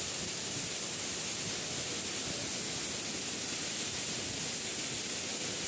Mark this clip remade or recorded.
recorded